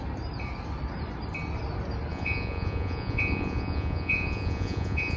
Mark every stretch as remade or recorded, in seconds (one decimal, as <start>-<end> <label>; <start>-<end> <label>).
0.0-2.1 recorded; 2.1-5.2 remade